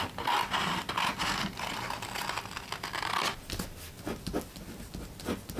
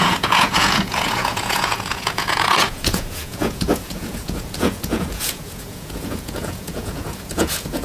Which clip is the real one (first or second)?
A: first